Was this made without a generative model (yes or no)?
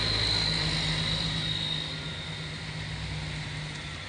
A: yes